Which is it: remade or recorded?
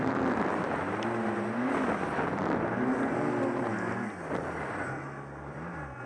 recorded